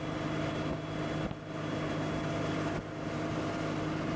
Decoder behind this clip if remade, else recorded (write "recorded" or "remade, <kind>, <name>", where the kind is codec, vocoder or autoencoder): recorded